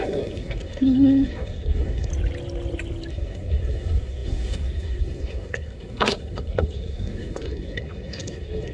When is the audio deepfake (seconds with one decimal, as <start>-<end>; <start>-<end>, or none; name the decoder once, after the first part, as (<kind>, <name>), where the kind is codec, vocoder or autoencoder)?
0.0-2.1 (codec, SNAC); 3.1-8.7